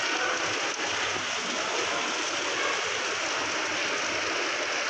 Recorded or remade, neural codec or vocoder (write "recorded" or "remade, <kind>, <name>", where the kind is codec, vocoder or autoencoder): recorded